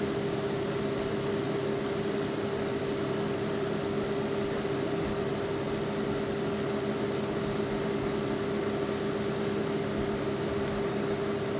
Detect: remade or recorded recorded